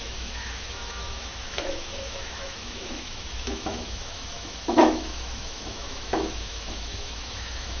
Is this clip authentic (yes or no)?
no